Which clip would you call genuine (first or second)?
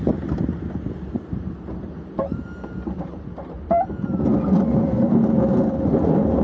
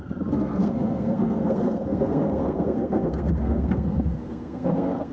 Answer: first